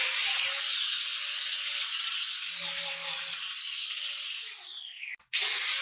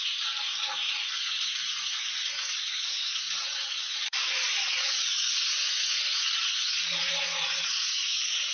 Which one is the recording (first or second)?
first